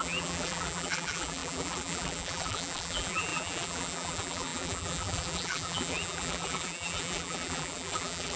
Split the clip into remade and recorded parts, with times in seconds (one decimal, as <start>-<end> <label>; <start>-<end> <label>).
0.0-8.4 remade